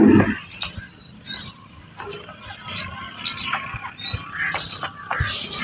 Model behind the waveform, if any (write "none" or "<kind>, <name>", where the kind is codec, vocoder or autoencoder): none